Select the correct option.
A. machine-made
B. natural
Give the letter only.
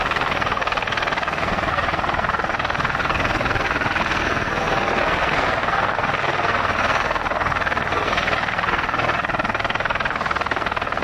A